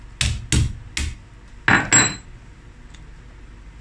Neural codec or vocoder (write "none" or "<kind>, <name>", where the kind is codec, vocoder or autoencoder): none